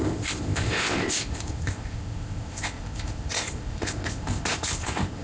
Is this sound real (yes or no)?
no